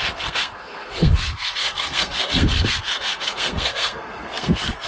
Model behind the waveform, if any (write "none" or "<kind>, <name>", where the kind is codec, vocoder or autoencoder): codec, SNAC